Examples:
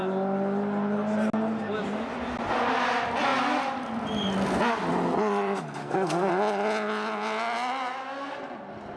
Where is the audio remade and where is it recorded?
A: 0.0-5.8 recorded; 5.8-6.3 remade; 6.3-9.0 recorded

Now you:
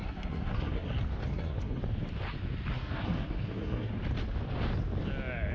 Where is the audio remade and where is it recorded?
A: 0.0-0.9 remade; 0.9-1.3 recorded; 1.3-1.8 remade; 1.8-2.7 recorded; 2.7-3.9 remade; 3.9-5.5 recorded

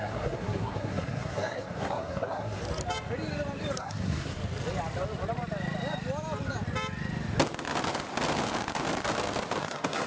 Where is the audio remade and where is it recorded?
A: 0.0-2.6 remade; 2.6-3.8 recorded; 3.8-4.4 remade; 4.4-9.6 recorded; 9.6-10.1 remade